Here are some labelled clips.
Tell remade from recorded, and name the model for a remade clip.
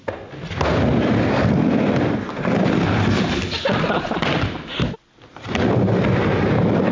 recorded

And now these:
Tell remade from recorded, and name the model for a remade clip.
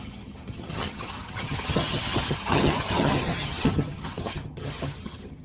remade, vocoder, HiFi-GAN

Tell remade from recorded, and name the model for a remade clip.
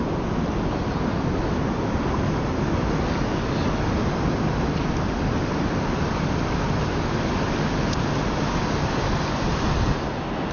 recorded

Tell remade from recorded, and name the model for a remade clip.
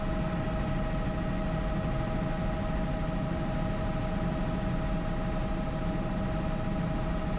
recorded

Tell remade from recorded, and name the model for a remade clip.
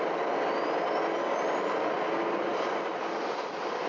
recorded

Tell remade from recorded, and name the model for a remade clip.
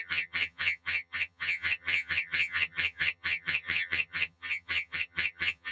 remade, vocoder, HiFi-GAN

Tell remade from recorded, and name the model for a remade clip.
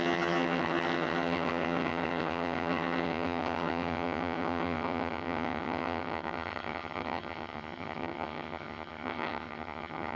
remade, vocoder, HiFi-GAN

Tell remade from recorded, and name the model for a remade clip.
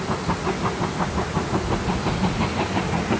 recorded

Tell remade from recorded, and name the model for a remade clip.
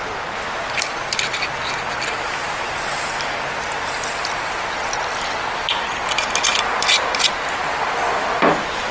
recorded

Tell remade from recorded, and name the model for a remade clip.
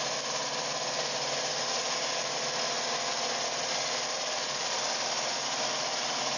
recorded